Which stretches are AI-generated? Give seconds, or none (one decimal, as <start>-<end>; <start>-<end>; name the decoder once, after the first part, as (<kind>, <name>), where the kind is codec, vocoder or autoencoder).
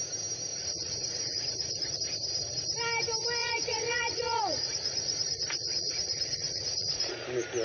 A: 0.5-2.0 (vocoder, Vocos); 3.4-7.1